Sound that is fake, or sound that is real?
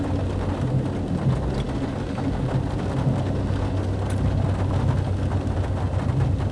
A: real